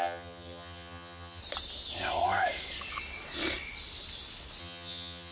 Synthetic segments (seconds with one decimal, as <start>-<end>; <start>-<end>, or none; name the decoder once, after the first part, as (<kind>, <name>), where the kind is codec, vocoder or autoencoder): 0.0-1.4 (vocoder, HiFi-GAN); 4.6-5.3